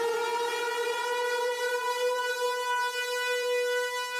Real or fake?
fake